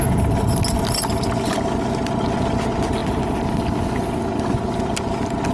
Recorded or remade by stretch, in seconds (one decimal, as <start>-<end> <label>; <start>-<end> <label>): 0.0-5.5 recorded